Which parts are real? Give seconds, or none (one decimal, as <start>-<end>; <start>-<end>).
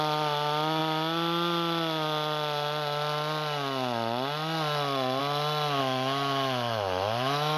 0.0-5.8